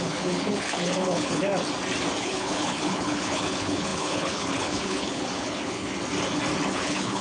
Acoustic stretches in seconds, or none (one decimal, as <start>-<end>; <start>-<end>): 1.5-2.2; 5.9-6.7

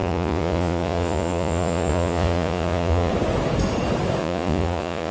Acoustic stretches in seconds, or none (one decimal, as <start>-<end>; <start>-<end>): 3.1-4.2

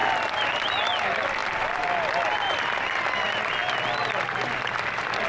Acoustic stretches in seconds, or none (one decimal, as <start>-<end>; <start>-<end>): 0.0-5.3

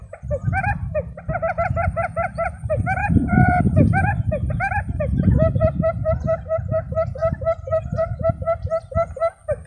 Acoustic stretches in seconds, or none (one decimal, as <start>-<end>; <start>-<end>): 0.0-3.0; 3.6-7.2; 8.3-9.7

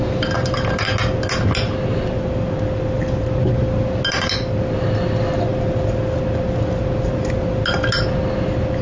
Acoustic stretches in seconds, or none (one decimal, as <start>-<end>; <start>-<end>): 0.0-8.8

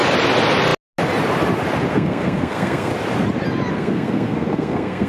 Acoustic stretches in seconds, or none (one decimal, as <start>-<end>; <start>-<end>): 0.0-1.9; 2.9-3.7

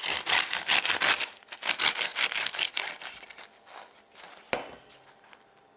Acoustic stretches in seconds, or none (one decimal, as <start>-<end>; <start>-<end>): 0.0-5.8